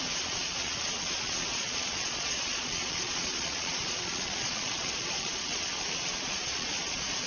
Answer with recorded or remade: remade